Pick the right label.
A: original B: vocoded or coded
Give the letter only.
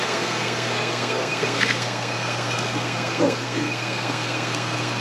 B